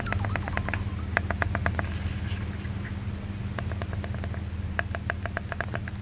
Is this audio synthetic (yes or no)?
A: no